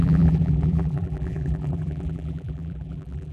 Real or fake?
fake